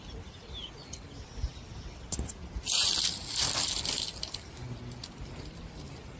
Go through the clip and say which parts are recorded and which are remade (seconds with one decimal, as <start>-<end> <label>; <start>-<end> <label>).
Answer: 0.0-6.2 recorded